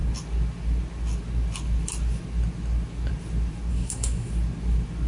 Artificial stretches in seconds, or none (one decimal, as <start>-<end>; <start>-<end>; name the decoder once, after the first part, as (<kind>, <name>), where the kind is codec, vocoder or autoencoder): 3.7-4.3 (codec, SNAC)